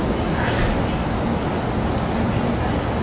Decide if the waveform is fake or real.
real